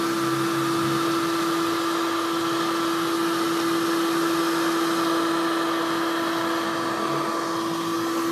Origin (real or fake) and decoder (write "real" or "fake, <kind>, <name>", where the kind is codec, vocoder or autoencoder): real